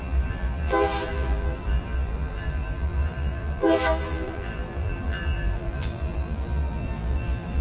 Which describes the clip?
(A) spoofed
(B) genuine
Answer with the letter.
A